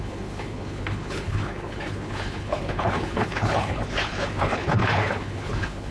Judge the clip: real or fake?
fake